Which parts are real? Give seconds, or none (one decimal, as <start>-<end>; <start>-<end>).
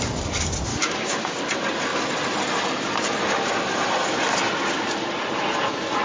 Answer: 0.0-0.7; 1.4-6.0